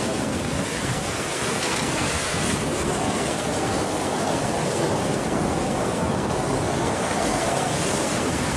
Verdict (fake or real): fake